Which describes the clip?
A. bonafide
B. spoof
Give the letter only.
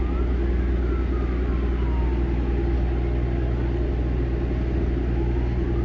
A